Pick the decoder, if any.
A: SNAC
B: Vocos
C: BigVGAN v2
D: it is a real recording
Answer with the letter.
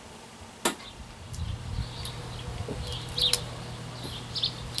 D